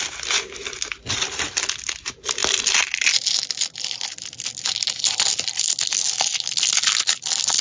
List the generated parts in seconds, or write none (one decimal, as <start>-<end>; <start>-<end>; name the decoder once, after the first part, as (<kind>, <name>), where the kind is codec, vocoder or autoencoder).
none